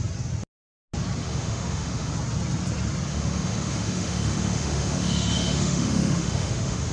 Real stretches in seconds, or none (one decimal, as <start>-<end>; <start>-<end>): 0.0-1.2; 2.1-3.1